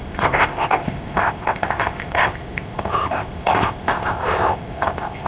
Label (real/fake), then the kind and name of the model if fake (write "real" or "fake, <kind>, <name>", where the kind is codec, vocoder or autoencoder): fake, codec, ZipCodec